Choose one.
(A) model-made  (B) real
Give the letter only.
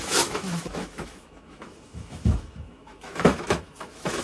A